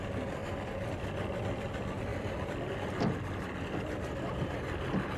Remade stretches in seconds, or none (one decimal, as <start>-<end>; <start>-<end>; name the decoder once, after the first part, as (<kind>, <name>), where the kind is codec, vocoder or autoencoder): none